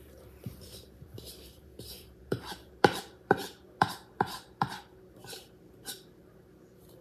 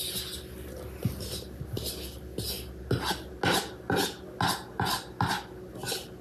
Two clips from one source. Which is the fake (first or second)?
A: first